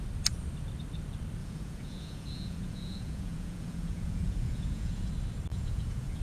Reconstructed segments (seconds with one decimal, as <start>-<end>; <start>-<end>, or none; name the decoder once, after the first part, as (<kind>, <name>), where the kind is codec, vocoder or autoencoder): 1.4-5.1 (vocoder, Vocos); 5.5-6.2